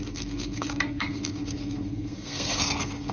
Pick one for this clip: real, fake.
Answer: fake